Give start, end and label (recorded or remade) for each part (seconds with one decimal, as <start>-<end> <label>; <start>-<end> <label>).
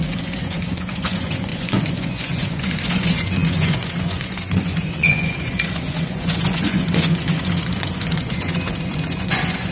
0.0-9.7 remade